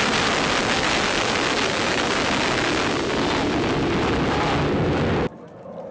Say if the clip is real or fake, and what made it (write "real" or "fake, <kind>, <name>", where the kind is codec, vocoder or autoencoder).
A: real